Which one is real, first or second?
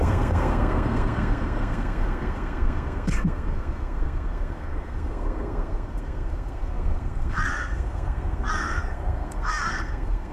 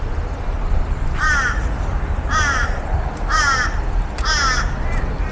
second